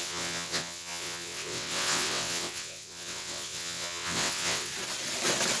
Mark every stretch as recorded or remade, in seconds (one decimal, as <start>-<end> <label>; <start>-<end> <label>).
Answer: 0.0-4.7 remade; 4.7-5.6 recorded